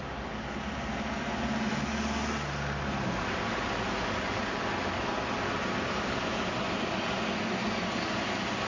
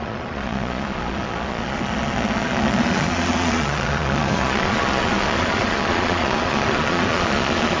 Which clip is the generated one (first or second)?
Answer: second